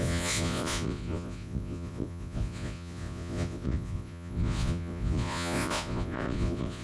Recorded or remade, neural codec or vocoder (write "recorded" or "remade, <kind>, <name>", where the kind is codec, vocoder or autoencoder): remade, vocoder, Vocos